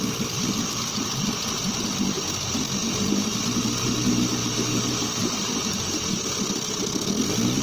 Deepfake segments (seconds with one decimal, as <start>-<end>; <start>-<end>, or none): 2.8-3.4; 4.4-6.4